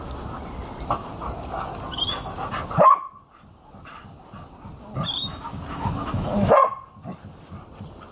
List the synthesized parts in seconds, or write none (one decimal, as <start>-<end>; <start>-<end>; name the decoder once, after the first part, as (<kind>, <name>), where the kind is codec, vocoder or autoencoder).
5.7-6.5 (autoencoder, DAC-VAE)